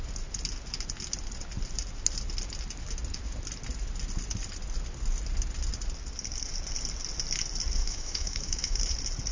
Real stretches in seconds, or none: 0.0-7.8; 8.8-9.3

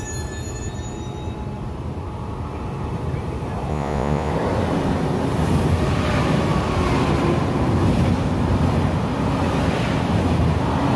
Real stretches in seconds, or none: 0.0-3.7; 4.3-11.0

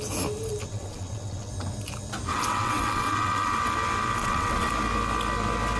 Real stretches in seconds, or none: 0.0-0.6; 1.5-2.3; 3.6-4.2; 4.7-5.8

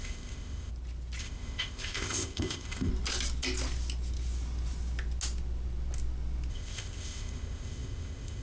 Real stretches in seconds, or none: 0.7-1.2; 2.9-6.5